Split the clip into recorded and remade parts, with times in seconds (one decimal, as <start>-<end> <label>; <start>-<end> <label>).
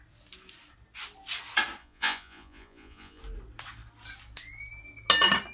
0.0-1.8 recorded; 1.8-3.2 remade; 3.2-5.5 recorded